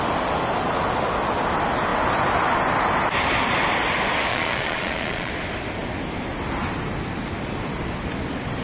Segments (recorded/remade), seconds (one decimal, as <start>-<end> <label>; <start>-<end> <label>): 0.0-4.3 recorded; 4.3-5.3 remade; 5.3-8.6 recorded